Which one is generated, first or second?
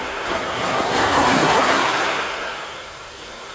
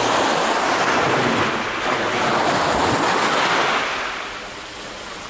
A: first